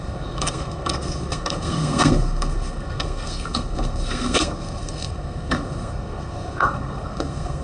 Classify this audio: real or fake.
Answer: fake